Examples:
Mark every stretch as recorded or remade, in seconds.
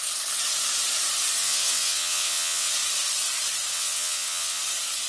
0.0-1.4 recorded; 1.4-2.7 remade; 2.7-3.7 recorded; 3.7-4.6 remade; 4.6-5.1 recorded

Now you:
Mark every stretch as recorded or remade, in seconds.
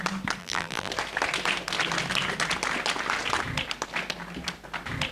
0.0-0.4 recorded; 0.4-0.9 remade; 0.9-5.1 recorded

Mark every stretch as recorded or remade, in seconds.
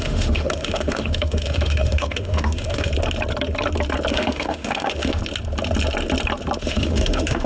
0.0-2.9 remade; 2.9-4.1 recorded; 4.1-5.2 remade; 5.2-6.6 recorded; 6.6-7.5 remade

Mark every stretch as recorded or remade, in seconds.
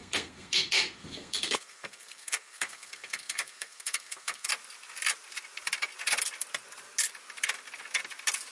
0.0-4.5 remade; 4.5-8.5 recorded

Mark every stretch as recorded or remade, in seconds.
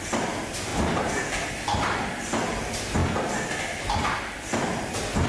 0.0-0.7 remade; 0.7-1.5 recorded; 1.5-3.0 remade; 3.0-4.5 recorded; 4.5-5.3 remade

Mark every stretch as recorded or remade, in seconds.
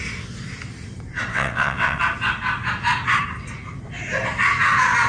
0.0-1.3 recorded; 1.3-2.0 remade; 2.0-5.1 recorded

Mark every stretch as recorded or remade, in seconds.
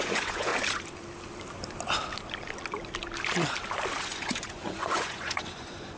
0.0-0.5 remade; 0.5-4.0 recorded; 4.0-6.0 remade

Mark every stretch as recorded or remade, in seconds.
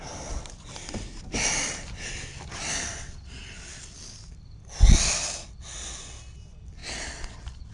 0.0-7.7 recorded